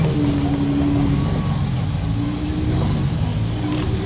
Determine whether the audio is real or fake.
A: real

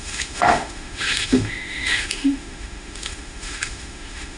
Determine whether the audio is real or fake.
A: fake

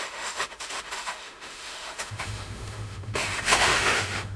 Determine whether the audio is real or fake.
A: fake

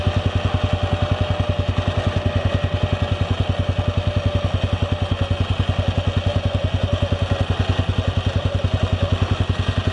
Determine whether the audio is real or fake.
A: real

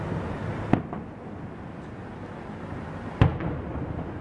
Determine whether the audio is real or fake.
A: real